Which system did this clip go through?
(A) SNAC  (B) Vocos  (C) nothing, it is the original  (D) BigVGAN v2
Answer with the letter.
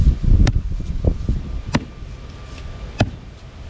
C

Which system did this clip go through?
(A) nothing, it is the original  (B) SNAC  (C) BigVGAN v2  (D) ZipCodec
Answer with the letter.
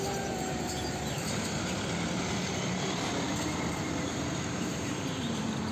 C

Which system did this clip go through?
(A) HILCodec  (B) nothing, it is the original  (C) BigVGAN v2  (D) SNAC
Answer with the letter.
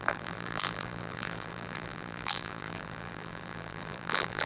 C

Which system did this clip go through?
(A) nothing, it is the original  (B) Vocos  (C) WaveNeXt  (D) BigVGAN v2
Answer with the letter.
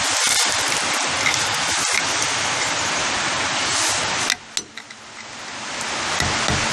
A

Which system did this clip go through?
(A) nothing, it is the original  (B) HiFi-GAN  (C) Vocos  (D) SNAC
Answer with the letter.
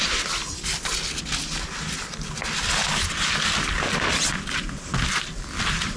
A